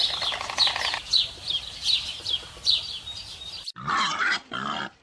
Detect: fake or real fake